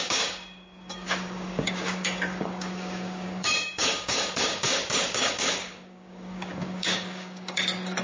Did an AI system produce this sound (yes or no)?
yes